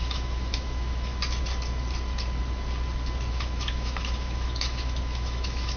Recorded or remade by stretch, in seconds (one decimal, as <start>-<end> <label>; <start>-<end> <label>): 0.0-1.1 remade; 1.1-3.3 recorded; 3.3-5.8 remade